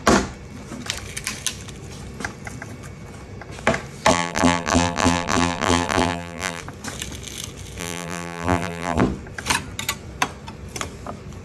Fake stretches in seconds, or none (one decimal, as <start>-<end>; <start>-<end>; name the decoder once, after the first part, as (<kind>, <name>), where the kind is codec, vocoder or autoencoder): 4.1-6.6 (vocoder, BigVGAN v2); 7.8-9.0